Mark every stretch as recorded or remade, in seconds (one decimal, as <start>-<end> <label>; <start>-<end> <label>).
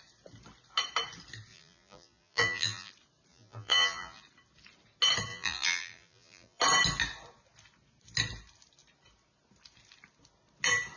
0.0-1.5 recorded; 1.5-2.9 remade; 2.9-3.3 recorded; 3.3-4.2 remade; 4.2-5.3 recorded; 5.3-6.6 remade; 6.6-11.0 recorded